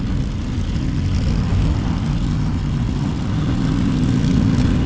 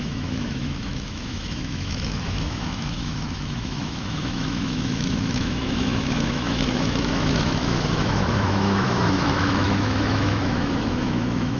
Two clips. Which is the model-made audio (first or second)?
second